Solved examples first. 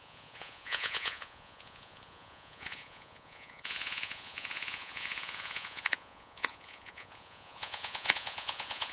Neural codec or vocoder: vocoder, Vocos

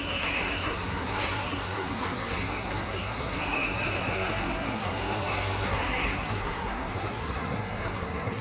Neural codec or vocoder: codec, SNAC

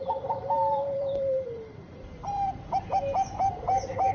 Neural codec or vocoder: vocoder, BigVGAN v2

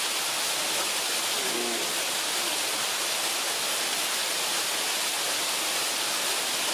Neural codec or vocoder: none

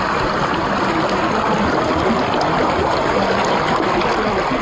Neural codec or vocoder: none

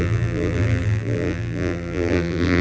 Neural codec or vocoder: vocoder, BigVGAN v2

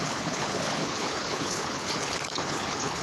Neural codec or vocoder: codec, HILCodec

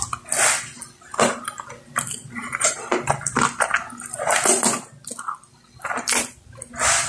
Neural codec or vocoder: vocoder, BigVGAN v2